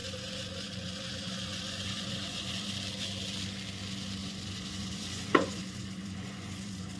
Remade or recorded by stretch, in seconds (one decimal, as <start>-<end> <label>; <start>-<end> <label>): 0.0-2.7 remade; 2.7-4.2 recorded; 4.2-7.0 remade